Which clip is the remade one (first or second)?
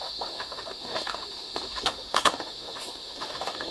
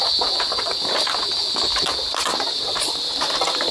first